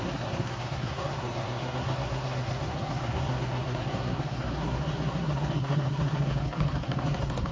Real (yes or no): no